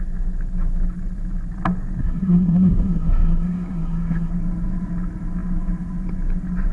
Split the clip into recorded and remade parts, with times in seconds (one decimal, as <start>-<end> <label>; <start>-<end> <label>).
0.0-2.0 recorded; 2.0-4.3 remade; 4.3-6.7 recorded